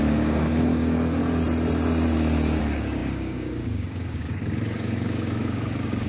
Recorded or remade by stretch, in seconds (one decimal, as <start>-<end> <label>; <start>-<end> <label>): 0.0-1.2 remade; 1.2-2.6 recorded; 2.6-6.1 remade